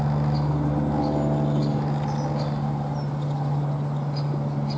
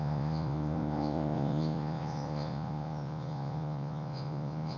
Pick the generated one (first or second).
second